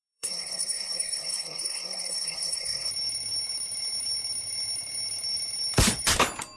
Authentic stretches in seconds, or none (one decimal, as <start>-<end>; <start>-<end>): 2.9-6.6